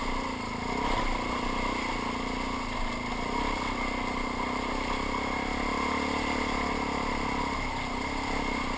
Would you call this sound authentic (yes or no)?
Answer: yes